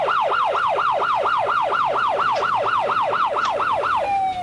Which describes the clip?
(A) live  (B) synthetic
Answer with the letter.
A